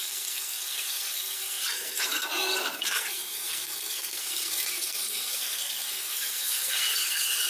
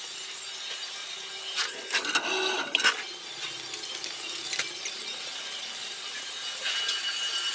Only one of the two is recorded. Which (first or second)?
second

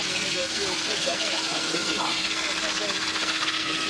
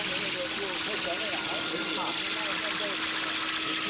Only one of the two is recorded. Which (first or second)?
second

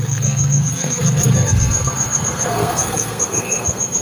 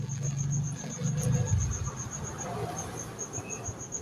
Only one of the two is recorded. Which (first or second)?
second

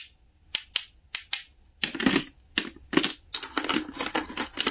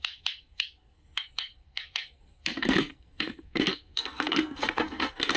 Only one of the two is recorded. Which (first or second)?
first